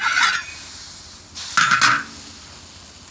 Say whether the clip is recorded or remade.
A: recorded